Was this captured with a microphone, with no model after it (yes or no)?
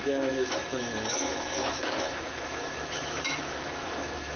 no